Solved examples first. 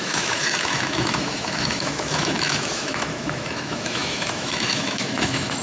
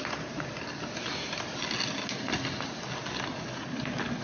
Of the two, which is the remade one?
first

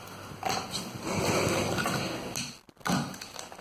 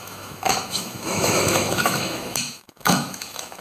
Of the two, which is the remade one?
second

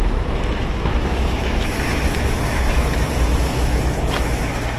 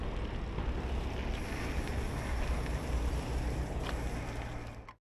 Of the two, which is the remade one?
first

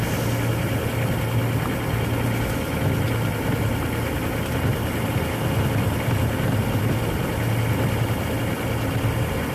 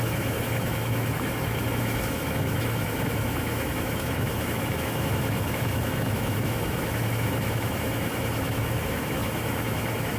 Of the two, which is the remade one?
second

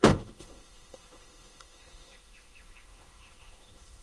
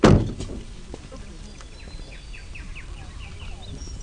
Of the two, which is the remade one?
first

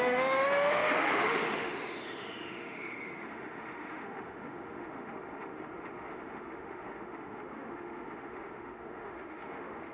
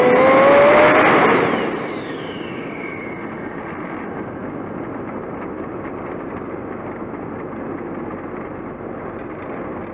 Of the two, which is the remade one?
first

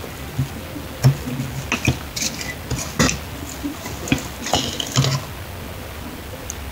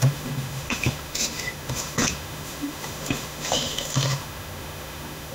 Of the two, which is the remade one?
second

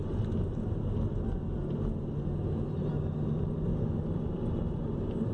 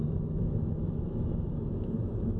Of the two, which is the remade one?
second